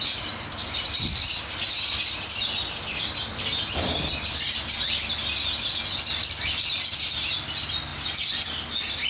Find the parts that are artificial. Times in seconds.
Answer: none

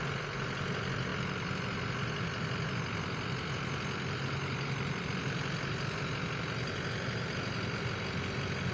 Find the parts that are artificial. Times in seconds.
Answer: none

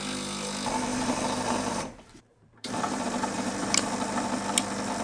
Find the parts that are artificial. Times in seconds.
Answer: 0.9-3.9

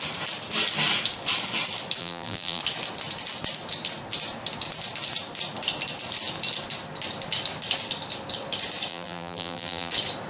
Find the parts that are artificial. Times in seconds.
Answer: 2.0-2.6; 8.9-9.9

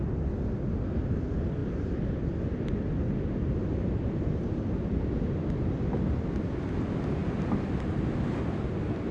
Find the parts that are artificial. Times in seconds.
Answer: none

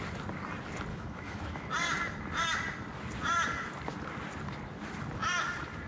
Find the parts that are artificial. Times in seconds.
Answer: 0.9-1.7